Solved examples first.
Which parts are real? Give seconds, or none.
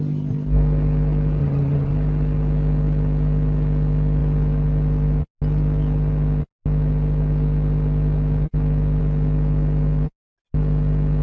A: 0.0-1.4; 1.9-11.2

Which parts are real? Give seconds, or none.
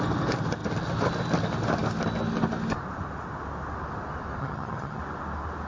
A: 0.0-4.4; 5.0-5.7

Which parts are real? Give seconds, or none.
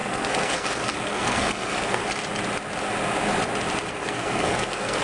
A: 2.0-3.9